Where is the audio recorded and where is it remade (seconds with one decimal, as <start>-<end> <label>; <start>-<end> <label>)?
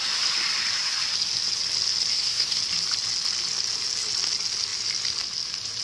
0.0-2.1 recorded; 2.1-2.6 remade; 2.6-5.8 recorded